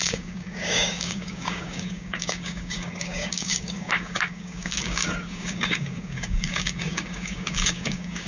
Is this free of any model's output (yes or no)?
no